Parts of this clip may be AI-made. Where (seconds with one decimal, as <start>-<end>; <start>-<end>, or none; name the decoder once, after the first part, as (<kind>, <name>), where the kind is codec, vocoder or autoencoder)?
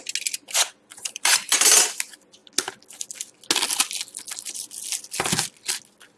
0.9-1.7 (vocoder, BigVGAN v2)